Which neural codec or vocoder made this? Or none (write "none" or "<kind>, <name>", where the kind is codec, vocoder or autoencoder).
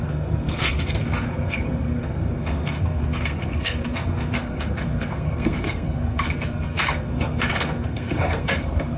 codec, SNAC